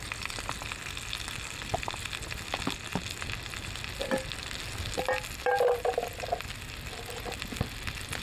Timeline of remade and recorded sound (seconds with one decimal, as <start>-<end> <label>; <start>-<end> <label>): 0.0-8.2 recorded